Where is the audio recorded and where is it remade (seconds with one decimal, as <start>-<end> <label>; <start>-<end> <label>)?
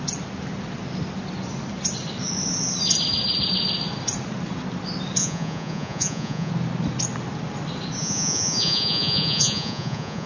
0.0-5.2 recorded; 5.2-6.5 remade; 6.5-8.0 recorded; 8.0-10.3 remade